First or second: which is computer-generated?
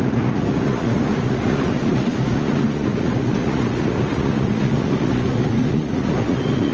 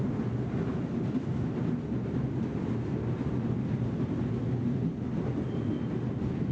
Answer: first